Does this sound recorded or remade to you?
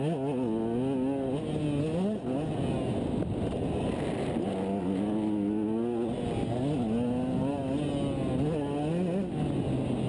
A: recorded